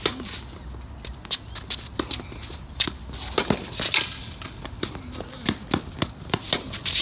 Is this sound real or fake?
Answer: real